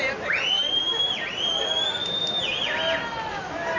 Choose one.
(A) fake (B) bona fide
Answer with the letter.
B